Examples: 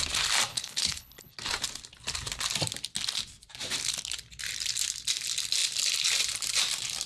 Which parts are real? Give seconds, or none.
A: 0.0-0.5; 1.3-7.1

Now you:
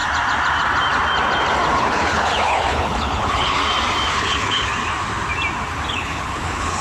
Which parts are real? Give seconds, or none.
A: 0.0-1.8; 3.6-4.1; 4.7-5.9

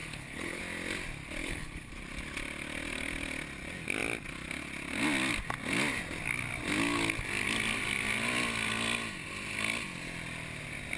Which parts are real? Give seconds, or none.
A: 0.6-1.4; 1.9-11.0